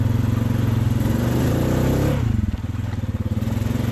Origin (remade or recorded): recorded